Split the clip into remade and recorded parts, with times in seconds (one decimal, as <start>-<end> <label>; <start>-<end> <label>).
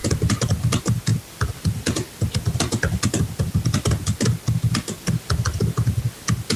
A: 0.0-6.6 recorded